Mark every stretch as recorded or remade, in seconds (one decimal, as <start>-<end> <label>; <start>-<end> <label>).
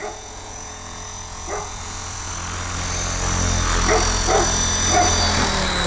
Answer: 0.0-2.3 remade; 2.3-5.9 recorded